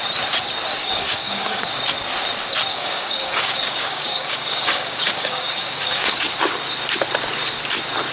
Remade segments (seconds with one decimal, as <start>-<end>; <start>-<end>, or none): 0.8-1.7; 2.7-6.3